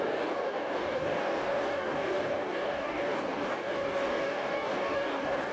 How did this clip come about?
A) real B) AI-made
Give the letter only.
B